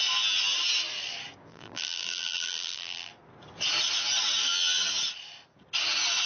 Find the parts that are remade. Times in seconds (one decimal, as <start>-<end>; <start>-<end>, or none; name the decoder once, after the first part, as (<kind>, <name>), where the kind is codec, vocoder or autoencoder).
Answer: 1.5-3.1 (vocoder, BigVGAN v2)